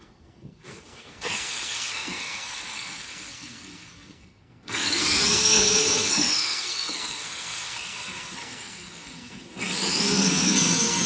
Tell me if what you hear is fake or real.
fake